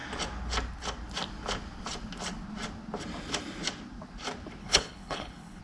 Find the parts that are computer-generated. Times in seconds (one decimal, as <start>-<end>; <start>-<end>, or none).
4.6-5.6